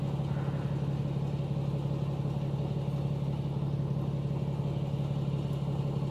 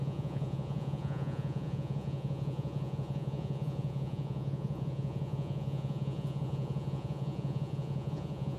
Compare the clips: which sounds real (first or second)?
first